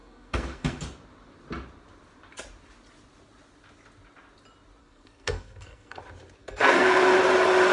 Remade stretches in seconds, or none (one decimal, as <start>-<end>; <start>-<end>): 0.0-0.8; 4.8-6.0; 6.4-7.1